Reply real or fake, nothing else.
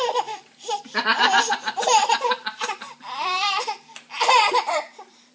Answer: fake